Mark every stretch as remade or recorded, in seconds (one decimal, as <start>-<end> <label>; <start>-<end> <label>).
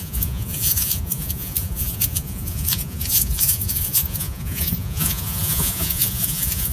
0.0-6.7 remade